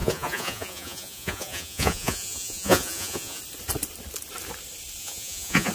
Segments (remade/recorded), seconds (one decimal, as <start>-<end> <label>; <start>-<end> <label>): 0.0-3.4 remade; 3.4-5.0 recorded; 5.0-5.7 remade